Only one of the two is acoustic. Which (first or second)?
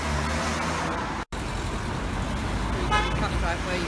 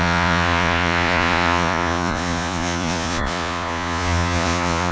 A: first